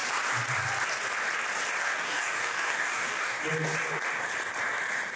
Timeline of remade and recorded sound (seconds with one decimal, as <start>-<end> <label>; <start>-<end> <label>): 0.0-1.8 recorded; 1.8-3.4 remade; 3.4-5.2 recorded